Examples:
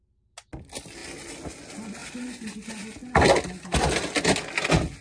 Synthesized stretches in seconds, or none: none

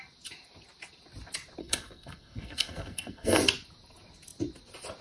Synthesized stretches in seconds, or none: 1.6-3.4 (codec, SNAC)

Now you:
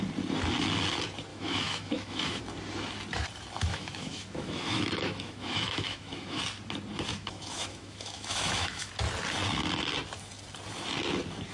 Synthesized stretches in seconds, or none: 1.3-2.4 (autoencoder, DAC-VAE); 3.7-6.4; 7.1-8.9